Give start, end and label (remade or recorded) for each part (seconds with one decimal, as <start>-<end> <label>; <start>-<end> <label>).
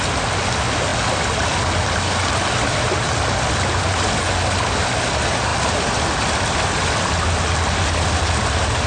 0.0-8.9 recorded